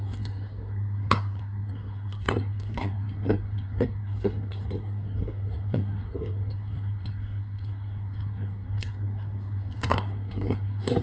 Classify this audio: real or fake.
fake